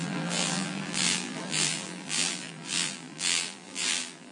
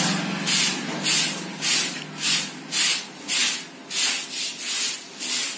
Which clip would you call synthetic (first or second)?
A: first